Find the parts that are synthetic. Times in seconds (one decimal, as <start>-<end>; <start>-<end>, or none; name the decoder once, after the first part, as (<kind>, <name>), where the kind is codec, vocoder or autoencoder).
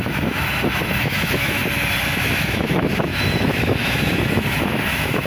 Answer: 0.0-1.6 (autoencoder, DAC-VAE); 2.2-5.3